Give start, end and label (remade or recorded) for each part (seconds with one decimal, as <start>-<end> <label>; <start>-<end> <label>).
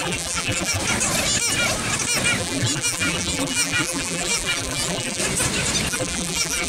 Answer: 0.0-0.8 remade; 0.8-2.4 recorded; 2.4-5.2 remade; 5.2-5.9 recorded; 5.9-6.7 remade